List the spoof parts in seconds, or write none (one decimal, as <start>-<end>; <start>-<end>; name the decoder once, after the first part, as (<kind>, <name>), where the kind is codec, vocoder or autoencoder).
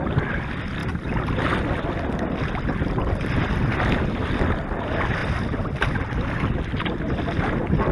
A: 0.8-1.6 (vocoder, BigVGAN v2); 5.2-6.9